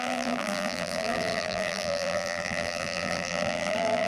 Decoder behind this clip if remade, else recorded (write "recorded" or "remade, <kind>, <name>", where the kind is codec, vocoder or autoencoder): remade, vocoder, BigVGAN v2